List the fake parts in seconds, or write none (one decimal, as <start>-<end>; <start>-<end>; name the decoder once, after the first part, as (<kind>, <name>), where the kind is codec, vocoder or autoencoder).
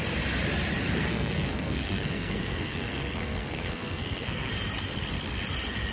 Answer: 1.0-4.5 (codec, SNAC)